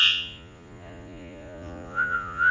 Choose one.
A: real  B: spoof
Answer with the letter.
B